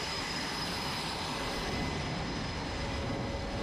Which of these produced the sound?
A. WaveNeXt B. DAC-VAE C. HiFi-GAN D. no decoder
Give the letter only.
D